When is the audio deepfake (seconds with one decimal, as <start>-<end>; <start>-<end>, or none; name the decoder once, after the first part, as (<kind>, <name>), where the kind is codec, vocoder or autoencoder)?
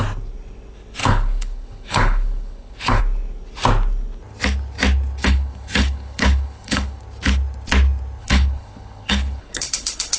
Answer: 1.0-3.0 (codec, HILCodec); 5.2-7.0; 8.2-10.2